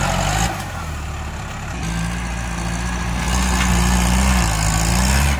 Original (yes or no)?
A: yes